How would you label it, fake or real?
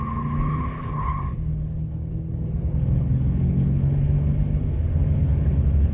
fake